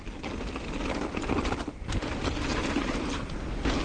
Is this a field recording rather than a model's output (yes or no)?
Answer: yes